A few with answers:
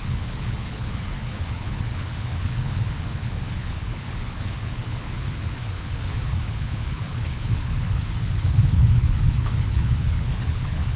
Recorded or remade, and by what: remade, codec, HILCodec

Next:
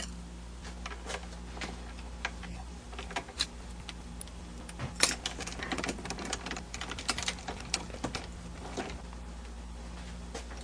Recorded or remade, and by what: recorded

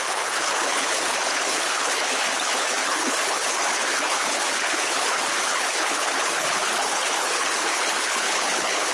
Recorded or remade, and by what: remade, codec, HILCodec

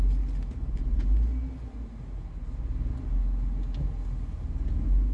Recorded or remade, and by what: recorded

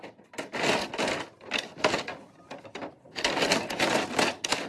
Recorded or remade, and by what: recorded